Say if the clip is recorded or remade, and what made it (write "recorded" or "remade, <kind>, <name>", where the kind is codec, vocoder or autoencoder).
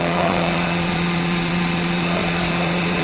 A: remade, vocoder, Vocos